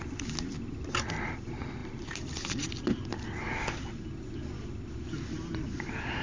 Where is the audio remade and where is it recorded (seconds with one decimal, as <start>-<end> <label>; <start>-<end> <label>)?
0.0-6.2 recorded